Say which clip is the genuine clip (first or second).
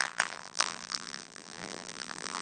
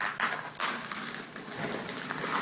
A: second